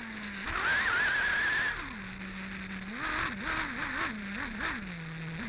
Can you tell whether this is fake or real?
real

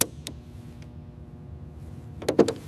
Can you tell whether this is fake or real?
real